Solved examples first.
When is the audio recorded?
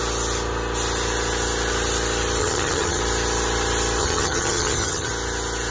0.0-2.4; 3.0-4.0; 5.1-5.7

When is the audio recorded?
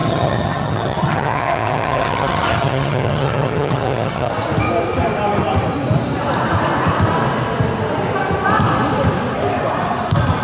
4.3-10.4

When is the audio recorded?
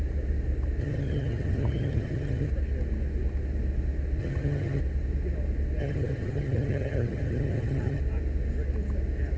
0.0-0.8; 2.5-4.2; 4.8-5.8; 8.0-9.4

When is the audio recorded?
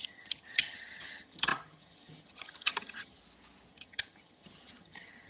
3.2-3.7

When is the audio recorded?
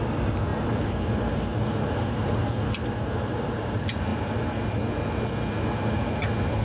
0.0-6.6